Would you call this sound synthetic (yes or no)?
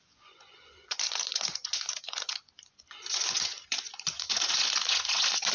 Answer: yes